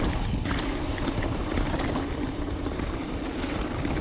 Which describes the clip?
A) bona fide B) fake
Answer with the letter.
B